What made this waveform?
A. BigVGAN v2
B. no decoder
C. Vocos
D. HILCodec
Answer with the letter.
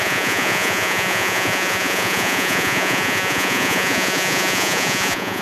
C